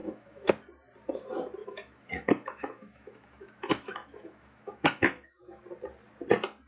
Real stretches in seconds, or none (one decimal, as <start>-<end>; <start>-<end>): 0.5-1.6; 5.6-6.7